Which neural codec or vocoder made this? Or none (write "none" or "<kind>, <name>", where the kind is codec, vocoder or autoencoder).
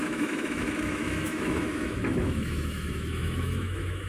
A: autoencoder, DAC-VAE